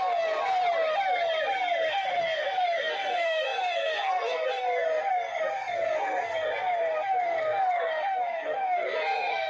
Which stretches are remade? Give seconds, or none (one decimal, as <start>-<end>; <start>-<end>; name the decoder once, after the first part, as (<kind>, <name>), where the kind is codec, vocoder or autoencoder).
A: 0.0-0.6 (codec, SNAC); 1.9-9.5